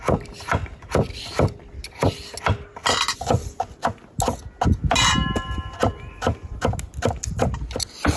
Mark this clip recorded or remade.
recorded